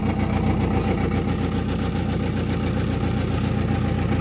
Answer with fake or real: real